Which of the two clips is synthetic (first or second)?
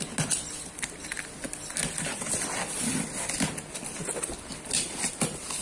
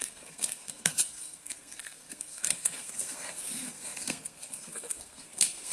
second